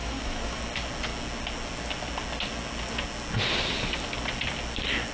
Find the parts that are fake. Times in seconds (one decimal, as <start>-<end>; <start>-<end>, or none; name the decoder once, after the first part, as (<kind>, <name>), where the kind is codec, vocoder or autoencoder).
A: 0.0-0.6 (autoencoder, DAC-VAE)